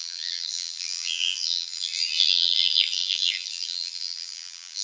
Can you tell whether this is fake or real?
fake